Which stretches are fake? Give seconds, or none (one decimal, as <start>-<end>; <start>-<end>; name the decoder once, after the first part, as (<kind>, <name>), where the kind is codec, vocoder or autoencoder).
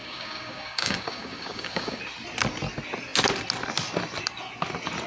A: 0.0-2.0 (codec, DAC)